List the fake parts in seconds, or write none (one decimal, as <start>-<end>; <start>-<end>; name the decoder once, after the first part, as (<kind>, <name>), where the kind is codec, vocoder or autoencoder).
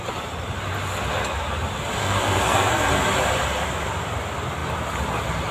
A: 2.0-2.9 (codec, SNAC)